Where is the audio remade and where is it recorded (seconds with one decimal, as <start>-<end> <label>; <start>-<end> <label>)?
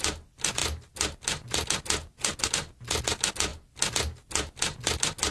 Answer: 0.0-5.3 recorded